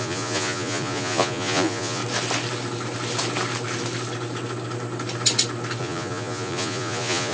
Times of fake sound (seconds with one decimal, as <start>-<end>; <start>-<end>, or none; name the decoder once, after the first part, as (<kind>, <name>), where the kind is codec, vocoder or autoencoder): 0.0-2.0 (vocoder, Vocos); 5.8-7.3